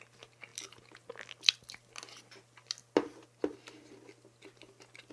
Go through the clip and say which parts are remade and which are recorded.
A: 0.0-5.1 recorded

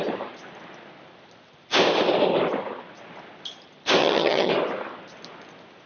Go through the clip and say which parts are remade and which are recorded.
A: 0.0-4.0 recorded; 4.0-4.5 remade; 4.5-5.9 recorded

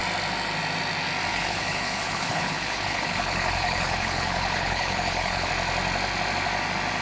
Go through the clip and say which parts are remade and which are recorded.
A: 0.0-1.3 recorded; 1.3-5.5 remade; 5.5-7.0 recorded

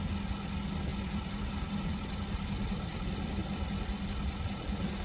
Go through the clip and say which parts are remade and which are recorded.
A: 0.0-0.9 recorded; 0.9-2.2 remade; 2.2-3.4 recorded; 3.4-4.0 remade; 4.0-5.0 recorded

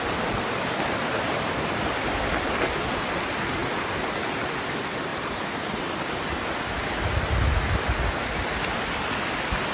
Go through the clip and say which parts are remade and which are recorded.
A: 0.0-9.7 recorded